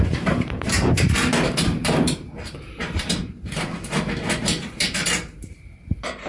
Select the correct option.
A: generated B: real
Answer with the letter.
A